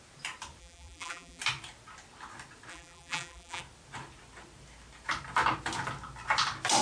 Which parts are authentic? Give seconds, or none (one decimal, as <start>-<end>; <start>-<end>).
0.0-0.6; 1.4-2.7; 3.6-6.8